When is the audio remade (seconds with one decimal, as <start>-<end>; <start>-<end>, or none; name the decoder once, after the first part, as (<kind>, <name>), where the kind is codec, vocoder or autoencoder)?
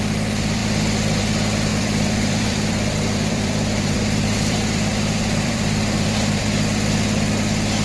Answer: 1.7-6.4 (vocoder, BigVGAN v2)